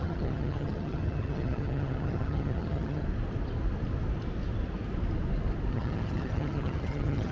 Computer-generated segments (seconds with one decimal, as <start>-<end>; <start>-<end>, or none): 0.0-3.0; 5.7-7.3